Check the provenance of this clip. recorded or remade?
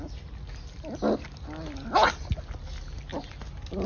recorded